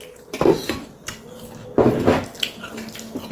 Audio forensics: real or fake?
real